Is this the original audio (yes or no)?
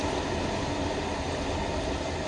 yes